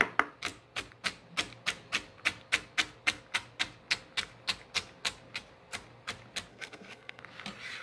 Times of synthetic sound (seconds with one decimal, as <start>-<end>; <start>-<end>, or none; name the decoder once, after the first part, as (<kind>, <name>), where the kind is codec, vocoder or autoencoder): 6.5-7.2 (codec, SNAC)